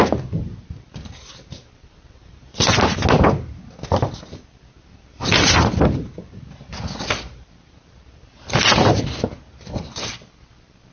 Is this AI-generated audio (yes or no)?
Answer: no